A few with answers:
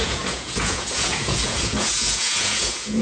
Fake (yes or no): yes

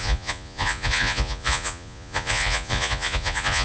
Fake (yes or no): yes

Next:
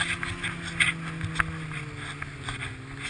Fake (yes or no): no